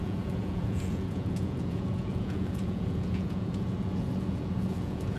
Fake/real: fake